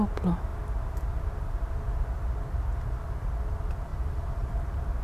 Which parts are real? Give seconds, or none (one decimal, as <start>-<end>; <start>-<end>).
0.0-3.9; 4.6-5.0